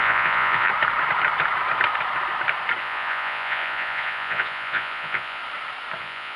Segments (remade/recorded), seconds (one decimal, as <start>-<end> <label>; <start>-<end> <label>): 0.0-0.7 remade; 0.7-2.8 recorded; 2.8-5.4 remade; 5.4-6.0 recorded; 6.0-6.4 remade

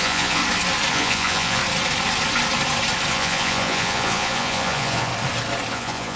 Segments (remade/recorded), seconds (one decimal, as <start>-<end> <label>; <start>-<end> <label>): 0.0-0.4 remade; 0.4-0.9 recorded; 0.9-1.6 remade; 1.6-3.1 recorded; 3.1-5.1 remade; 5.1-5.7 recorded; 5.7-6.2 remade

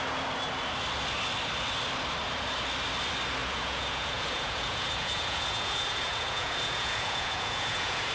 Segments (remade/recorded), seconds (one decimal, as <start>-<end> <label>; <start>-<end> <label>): 0.0-3.4 recorded; 3.4-8.1 remade